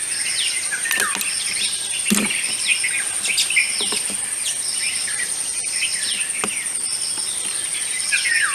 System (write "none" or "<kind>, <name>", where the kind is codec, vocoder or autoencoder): none